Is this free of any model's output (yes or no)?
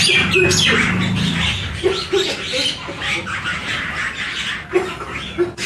yes